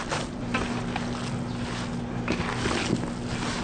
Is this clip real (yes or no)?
yes